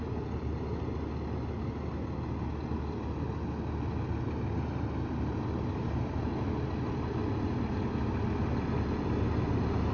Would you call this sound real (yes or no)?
yes